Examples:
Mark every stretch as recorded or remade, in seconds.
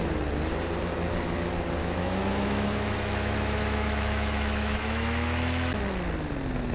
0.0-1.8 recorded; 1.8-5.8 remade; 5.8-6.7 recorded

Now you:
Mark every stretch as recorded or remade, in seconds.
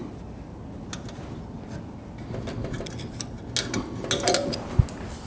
0.0-5.3 recorded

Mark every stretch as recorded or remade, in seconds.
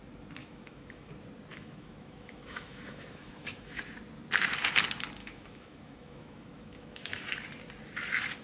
0.0-0.4 recorded; 0.4-1.1 remade; 1.1-1.5 recorded; 1.5-3.8 remade; 3.8-5.2 recorded; 5.2-7.1 remade; 7.1-8.4 recorded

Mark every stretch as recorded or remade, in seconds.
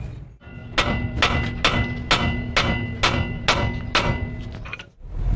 0.0-5.4 recorded